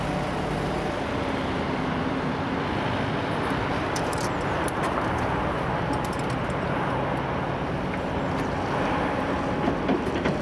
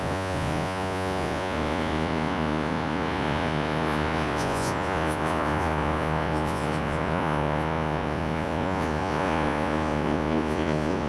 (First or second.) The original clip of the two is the first